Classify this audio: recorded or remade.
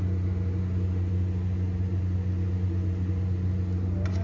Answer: recorded